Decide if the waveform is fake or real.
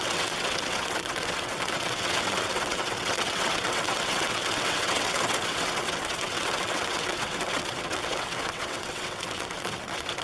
fake